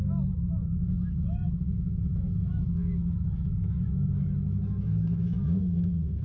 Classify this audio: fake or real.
fake